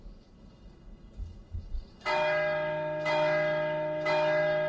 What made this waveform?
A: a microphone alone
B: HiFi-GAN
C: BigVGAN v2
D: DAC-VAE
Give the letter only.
D